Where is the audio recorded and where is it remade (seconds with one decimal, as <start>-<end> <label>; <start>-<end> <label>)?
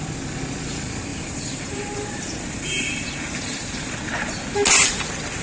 0.0-1.1 recorded; 1.1-3.9 remade; 3.9-5.4 recorded